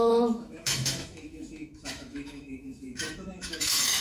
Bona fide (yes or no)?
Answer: no